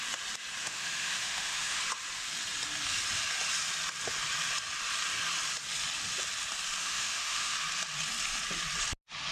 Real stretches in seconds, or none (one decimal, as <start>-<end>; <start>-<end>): 0.0-0.6; 1.8-6.8; 7.5-9.3